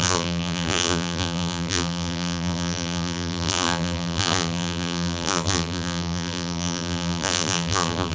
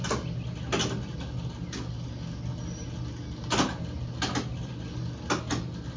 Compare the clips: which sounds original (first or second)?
second